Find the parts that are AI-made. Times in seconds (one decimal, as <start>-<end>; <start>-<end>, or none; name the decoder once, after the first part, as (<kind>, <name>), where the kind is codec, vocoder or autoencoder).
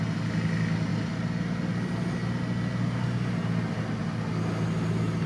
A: none